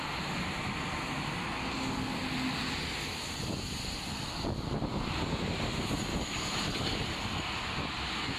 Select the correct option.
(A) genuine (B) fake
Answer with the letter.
A